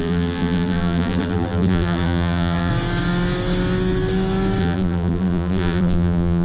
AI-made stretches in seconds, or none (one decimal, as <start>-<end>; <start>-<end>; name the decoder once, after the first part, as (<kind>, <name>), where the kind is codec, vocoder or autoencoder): 0.0-2.7 (vocoder, BigVGAN v2); 4.6-6.4

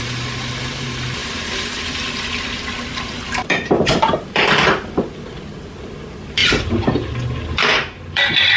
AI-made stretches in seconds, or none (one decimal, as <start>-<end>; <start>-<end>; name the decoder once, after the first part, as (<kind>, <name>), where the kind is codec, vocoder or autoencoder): 0.0-8.6 (vocoder, BigVGAN v2)

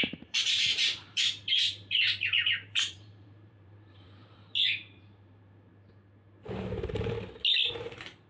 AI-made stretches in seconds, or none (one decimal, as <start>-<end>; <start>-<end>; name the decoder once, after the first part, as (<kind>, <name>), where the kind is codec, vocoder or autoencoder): 0.0-5.7 (vocoder, BigVGAN v2); 7.7-8.3

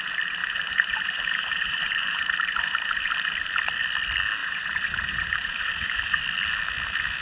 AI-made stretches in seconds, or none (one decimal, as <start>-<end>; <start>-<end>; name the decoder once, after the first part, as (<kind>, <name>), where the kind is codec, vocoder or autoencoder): 0.4-3.1 (vocoder, BigVGAN v2); 4.4-6.2

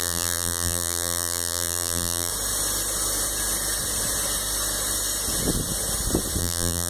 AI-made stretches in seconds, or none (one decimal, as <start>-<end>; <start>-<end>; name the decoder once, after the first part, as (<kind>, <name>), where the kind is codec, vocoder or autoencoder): 0.0-2.3 (vocoder, BigVGAN v2); 6.4-6.9

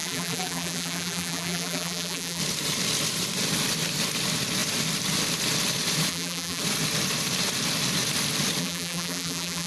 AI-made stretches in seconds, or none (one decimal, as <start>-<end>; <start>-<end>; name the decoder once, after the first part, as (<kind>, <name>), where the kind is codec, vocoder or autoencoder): 0.0-2.4 (vocoder, BigVGAN v2); 6.1-6.6; 8.6-9.7

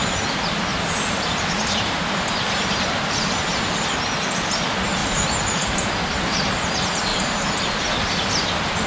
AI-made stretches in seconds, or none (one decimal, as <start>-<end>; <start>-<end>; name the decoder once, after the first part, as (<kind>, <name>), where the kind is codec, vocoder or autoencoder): 0.7-3.9 (vocoder, BigVGAN v2); 5.0-5.9; 7.1-7.6

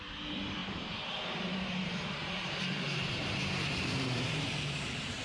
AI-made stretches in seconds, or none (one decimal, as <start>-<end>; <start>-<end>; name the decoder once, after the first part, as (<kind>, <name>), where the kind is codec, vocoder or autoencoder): 0.0-5.2 (vocoder, BigVGAN v2)